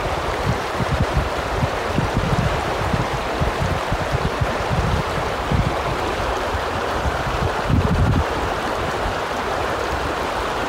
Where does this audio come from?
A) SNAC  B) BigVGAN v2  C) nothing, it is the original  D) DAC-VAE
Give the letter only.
B